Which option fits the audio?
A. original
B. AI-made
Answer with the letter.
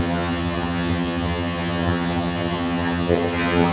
B